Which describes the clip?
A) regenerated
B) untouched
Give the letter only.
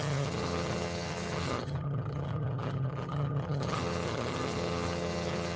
A